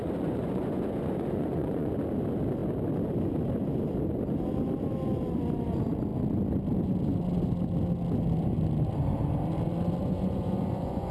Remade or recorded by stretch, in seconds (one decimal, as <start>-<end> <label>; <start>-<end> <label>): 0.0-1.9 remade; 1.9-10.0 recorded; 10.0-11.1 remade